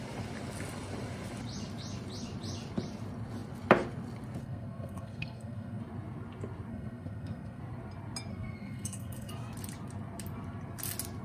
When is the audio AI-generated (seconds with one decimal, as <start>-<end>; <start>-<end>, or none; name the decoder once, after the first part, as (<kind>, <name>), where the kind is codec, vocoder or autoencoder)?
4.4-5.8 (codec, SNAC); 6.7-7.6; 8.3-9.3